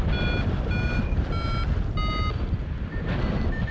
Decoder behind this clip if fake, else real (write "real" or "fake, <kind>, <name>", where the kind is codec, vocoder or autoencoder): real